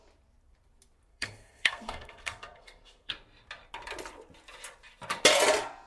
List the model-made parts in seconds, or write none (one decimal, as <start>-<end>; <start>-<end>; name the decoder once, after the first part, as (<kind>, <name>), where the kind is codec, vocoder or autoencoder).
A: 1.1-3.1 (codec, SNAC)